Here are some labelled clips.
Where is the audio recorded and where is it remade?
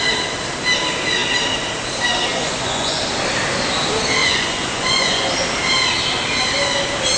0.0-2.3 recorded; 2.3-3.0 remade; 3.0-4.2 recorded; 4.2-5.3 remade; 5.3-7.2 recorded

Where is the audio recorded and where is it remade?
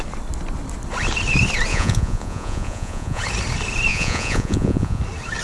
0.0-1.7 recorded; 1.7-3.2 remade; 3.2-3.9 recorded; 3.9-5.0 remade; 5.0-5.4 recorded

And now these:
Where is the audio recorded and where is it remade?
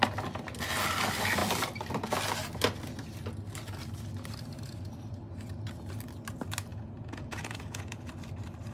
0.0-6.7 recorded; 6.7-8.1 remade; 8.1-8.7 recorded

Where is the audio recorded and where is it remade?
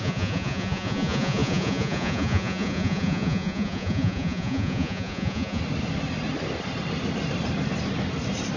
0.0-5.6 remade; 5.6-8.6 recorded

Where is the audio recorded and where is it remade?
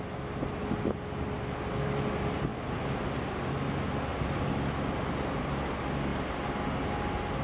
0.0-7.4 recorded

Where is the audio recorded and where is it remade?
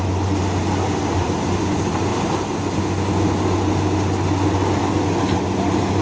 0.0-6.0 recorded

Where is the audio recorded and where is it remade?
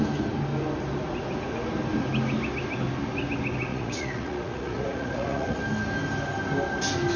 0.0-3.7 recorded; 3.7-5.6 remade; 5.6-7.2 recorded